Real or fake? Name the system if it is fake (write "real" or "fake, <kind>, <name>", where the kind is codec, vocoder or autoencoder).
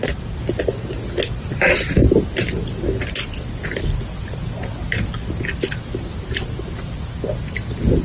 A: real